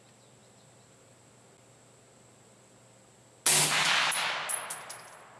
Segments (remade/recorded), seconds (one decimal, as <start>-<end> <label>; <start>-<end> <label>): 0.0-5.4 recorded